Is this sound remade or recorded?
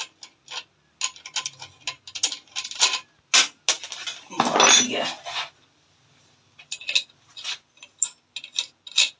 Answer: recorded